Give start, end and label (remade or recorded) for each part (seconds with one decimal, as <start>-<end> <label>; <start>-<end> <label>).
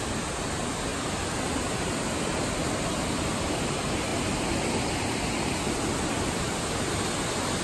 0.0-7.6 recorded